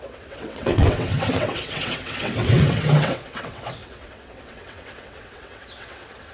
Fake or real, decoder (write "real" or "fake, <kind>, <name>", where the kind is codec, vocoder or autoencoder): fake, vocoder, WaveNeXt